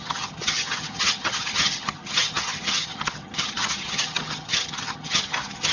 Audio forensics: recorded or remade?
remade